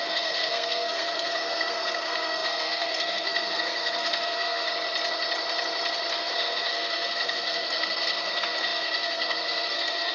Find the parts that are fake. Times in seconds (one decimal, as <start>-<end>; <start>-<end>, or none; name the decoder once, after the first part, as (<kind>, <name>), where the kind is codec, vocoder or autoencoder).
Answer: 0.0-4.7 (codec, SNAC); 6.1-10.1